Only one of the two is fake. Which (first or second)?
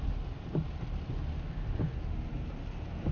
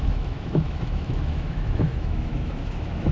second